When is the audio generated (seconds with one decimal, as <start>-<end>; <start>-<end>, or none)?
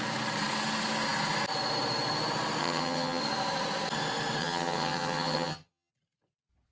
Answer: 2.6-3.2; 4.4-5.9